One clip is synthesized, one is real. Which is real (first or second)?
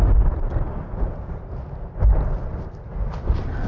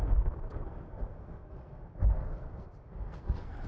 first